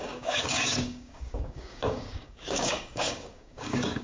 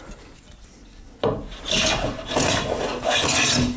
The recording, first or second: second